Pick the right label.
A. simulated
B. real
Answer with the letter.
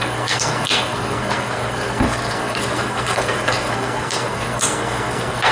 A